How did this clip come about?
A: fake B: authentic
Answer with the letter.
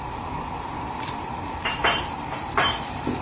A